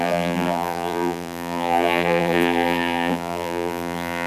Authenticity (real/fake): fake